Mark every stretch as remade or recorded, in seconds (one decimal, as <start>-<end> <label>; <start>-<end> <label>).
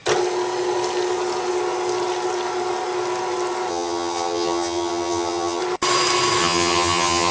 0.0-3.7 recorded; 3.7-5.6 remade; 5.6-6.4 recorded; 6.4-7.3 remade